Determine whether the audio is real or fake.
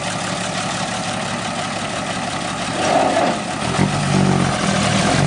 real